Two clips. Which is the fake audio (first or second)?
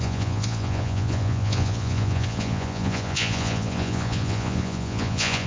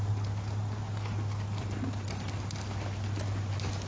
first